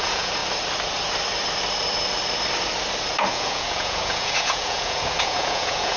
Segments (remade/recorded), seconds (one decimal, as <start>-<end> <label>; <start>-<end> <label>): 0.0-0.4 remade; 0.4-3.3 recorded; 3.3-6.0 remade